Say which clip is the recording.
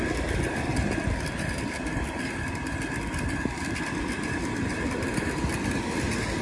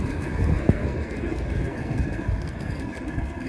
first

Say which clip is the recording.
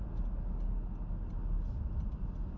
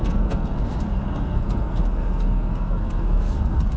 first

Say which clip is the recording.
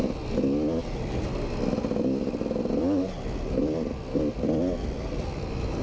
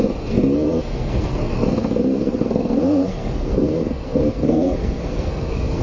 first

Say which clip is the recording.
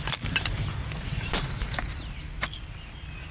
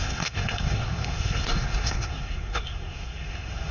first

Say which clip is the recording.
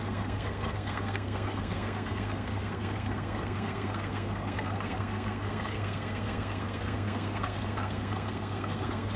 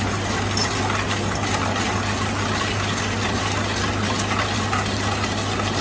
second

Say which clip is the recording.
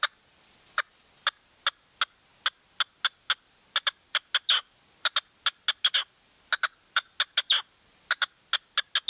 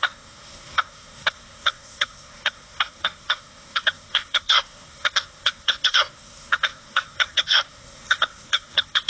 first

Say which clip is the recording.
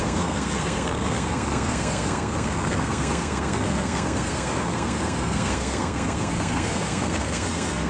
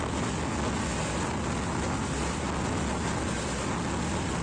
second